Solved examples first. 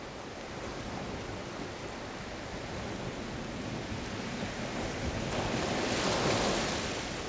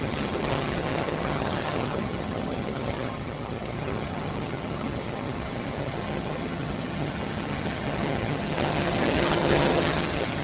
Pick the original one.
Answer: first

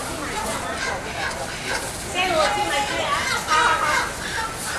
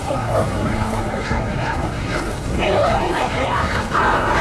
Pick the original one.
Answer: first